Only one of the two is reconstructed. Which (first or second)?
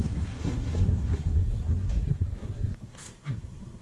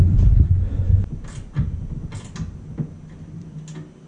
first